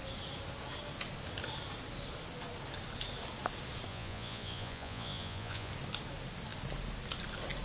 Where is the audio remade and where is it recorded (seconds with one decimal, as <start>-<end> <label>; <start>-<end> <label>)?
0.0-3.9 recorded; 3.9-5.7 remade; 5.7-7.6 recorded